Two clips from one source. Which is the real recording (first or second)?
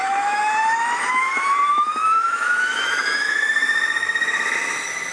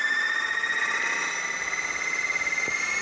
second